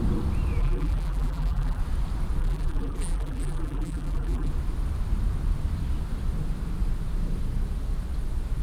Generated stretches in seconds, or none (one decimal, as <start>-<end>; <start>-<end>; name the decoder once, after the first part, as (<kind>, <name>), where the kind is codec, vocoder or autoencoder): 0.6-1.8 (vocoder, BigVGAN v2); 2.4-4.5